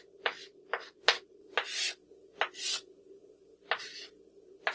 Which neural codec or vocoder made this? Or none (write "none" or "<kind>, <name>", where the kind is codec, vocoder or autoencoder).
none